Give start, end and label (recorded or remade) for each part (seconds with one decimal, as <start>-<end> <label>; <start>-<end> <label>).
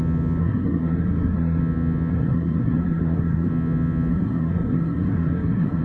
0.0-0.4 recorded; 0.4-1.6 remade; 1.6-2.1 recorded; 2.1-3.5 remade; 3.5-4.1 recorded; 4.1-5.8 remade